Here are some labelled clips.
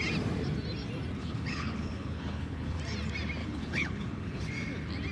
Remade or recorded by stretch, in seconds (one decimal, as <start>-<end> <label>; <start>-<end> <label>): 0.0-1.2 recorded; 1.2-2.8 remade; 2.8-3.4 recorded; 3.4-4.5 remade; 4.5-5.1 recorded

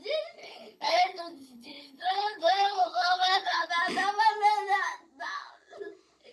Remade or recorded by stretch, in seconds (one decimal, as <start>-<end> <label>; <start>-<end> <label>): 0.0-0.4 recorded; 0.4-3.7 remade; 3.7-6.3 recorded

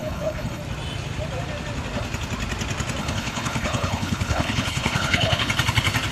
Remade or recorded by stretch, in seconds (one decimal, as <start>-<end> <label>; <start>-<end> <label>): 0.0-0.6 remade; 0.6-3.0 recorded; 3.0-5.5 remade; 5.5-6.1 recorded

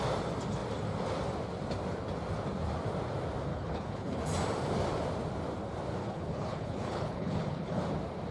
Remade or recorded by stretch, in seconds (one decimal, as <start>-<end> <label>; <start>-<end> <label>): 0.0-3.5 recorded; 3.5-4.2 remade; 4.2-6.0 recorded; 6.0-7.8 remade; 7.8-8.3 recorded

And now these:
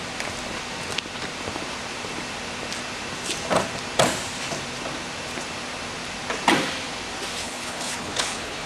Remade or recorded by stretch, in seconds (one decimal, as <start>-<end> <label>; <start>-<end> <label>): 0.0-7.4 recorded; 7.4-8.7 remade

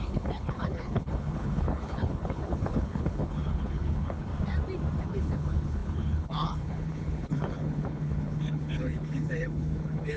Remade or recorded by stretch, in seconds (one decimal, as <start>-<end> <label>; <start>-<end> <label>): 0.0-4.3 remade; 4.3-5.0 recorded; 5.0-10.2 remade

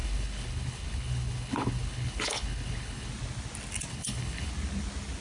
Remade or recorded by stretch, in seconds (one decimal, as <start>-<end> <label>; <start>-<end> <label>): 0.0-3.1 remade; 3.1-3.9 recorded; 3.9-4.5 remade; 4.5-5.2 recorded